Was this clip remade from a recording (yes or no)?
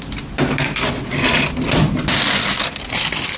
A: no